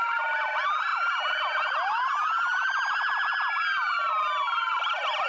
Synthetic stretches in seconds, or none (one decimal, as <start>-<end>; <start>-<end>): none